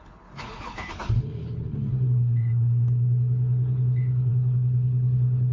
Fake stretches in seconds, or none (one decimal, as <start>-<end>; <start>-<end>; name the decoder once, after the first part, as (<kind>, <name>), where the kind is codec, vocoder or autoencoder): 0.0-5.5 (codec, HILCodec)